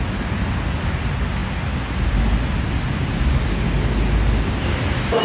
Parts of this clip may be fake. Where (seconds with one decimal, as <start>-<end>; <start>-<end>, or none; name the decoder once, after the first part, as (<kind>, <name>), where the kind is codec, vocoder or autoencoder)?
none